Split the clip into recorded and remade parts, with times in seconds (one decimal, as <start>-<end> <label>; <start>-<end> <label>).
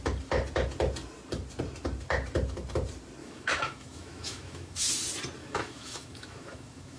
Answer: 0.0-3.2 recorded; 3.2-4.9 remade; 4.9-5.4 recorded; 5.4-7.0 remade